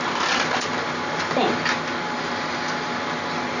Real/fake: real